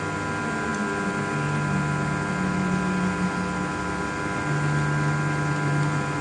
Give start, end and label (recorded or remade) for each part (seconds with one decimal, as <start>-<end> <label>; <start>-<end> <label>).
0.0-6.2 recorded